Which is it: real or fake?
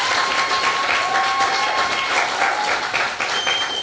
real